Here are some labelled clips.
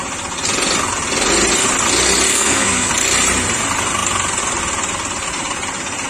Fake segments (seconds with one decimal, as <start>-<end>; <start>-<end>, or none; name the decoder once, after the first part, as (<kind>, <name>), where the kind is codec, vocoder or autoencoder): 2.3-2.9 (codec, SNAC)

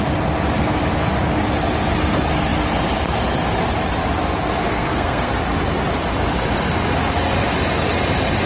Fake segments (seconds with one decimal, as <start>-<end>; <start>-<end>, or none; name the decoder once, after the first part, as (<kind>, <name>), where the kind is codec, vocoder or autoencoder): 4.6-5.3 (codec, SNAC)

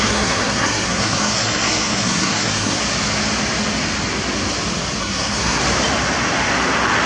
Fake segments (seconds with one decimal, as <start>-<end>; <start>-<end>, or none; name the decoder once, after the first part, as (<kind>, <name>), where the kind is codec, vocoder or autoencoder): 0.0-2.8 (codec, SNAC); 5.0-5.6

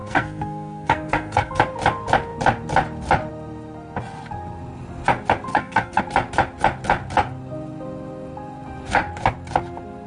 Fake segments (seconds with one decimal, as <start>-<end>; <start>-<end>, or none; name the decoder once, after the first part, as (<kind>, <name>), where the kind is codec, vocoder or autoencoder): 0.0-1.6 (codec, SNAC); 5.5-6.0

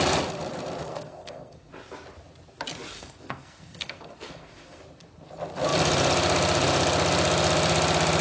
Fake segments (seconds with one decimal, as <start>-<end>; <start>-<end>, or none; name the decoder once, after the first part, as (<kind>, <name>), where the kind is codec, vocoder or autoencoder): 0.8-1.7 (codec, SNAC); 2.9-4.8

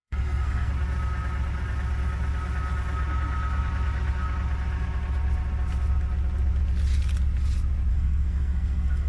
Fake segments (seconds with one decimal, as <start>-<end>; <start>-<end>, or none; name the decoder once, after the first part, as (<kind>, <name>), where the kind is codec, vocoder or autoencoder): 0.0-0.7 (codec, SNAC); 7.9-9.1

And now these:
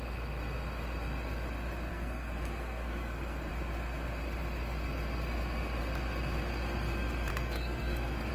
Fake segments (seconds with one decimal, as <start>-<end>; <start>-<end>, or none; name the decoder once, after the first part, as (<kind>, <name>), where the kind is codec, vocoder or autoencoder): 1.9-3.5 (codec, SNAC); 7.3-8.3

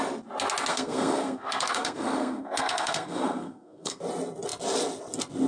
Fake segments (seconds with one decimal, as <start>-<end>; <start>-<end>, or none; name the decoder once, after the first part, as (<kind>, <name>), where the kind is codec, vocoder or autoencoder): 0.7-4.0 (codec, SNAC)